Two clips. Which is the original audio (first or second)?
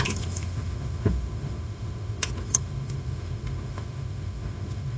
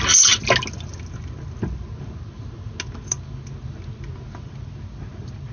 second